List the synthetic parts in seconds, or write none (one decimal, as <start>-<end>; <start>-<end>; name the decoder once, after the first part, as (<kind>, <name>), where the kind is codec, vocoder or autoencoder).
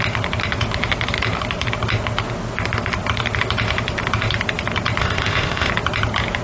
5.0-5.7 (codec, ZipCodec)